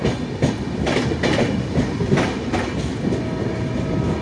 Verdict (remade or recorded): recorded